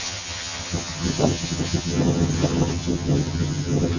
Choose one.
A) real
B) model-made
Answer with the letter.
B